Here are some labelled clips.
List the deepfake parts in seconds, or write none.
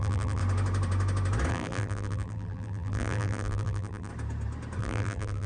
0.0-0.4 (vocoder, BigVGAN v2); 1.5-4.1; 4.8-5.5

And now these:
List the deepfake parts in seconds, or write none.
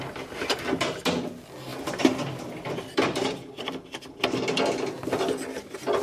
1.7-4.2 (vocoder, BigVGAN v2)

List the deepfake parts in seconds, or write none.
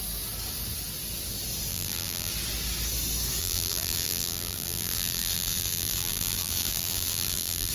1.7-2.3 (vocoder, BigVGAN v2); 3.4-7.7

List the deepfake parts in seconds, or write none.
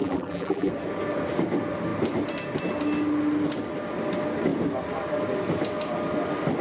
0.0-0.7 (vocoder, BigVGAN v2)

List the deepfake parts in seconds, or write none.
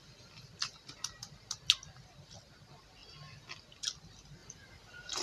3.0-3.6 (vocoder, BigVGAN v2); 4.4-5.2